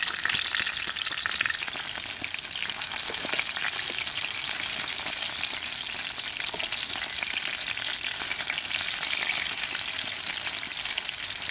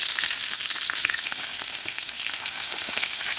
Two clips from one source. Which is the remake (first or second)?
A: second